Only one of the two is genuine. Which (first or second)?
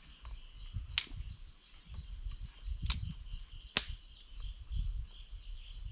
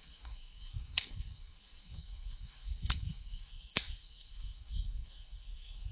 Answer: first